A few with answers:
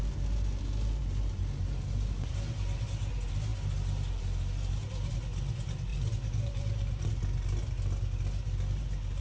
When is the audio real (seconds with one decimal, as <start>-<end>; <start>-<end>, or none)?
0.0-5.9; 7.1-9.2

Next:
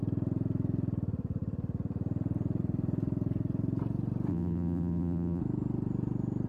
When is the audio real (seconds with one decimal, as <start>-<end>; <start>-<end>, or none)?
0.0-4.3; 5.4-6.5

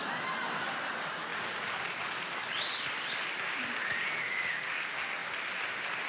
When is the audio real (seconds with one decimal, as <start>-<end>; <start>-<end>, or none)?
0.0-6.1

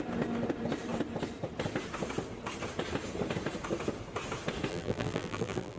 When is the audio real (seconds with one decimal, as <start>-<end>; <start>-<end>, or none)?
0.0-4.7

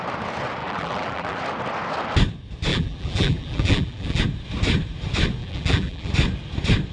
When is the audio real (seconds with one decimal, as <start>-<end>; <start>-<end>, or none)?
0.0-0.6; 1.4-2.7; 4.2-5.4; 6.1-6.9

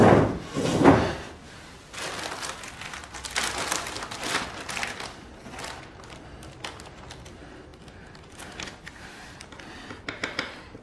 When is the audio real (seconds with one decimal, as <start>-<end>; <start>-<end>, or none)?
0.0-7.7; 9.8-10.8